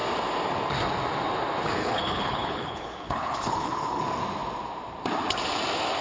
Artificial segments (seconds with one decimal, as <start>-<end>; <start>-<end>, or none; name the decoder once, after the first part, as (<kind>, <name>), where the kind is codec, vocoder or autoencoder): 1.8-4.0 (codec, HILCodec)